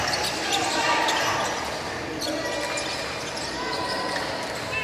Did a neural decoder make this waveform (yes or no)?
no